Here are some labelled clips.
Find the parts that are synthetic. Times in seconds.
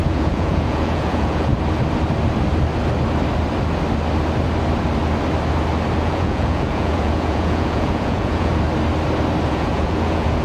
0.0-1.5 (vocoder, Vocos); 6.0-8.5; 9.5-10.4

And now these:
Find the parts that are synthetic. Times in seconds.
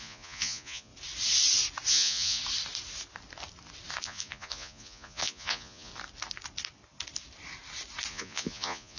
0.0-0.9 (vocoder, Vocos); 1.9-2.4; 4.0-5.9; 8.1-9.0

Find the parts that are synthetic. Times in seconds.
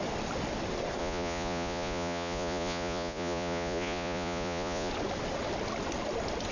1.0-4.9 (vocoder, Vocos)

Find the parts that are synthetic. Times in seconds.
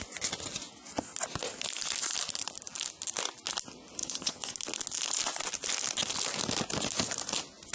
4.0-4.5 (vocoder, Vocos)